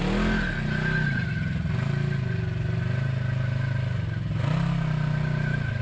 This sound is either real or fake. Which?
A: real